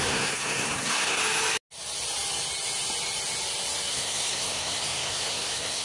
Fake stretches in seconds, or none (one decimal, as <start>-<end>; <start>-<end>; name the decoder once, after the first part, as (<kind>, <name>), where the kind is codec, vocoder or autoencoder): 0.0-1.2 (codec, SNAC); 3.9-5.8